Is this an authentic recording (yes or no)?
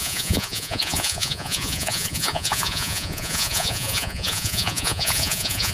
no